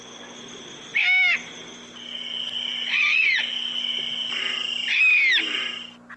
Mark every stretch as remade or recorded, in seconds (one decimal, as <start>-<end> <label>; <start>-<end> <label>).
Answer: 0.0-6.2 recorded